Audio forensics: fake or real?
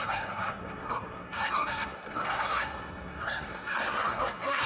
fake